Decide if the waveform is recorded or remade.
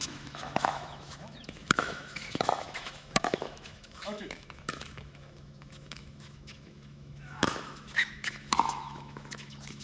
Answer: remade